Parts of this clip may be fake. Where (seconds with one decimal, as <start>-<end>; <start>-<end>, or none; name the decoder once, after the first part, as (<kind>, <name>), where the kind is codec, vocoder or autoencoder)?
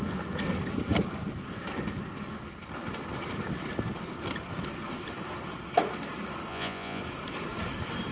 6.5-7.0 (vocoder, Vocos)